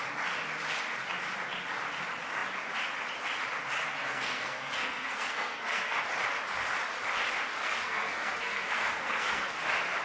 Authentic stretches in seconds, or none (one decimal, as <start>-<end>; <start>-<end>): 0.0-4.0; 6.0-7.5; 9.6-10.0